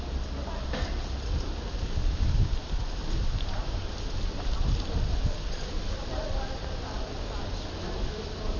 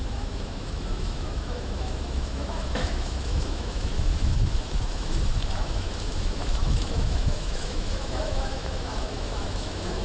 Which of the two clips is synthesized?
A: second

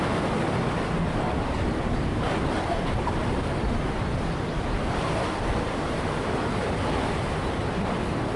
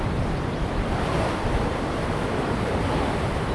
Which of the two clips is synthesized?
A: second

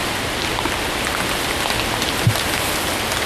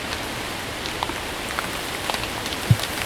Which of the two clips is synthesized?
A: second